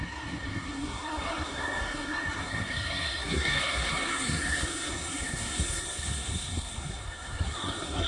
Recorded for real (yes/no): no